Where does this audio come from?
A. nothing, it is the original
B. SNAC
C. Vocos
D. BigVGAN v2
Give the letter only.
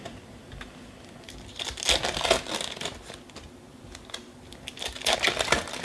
A